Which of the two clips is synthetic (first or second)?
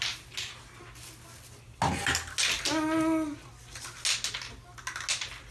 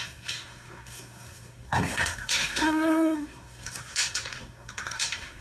second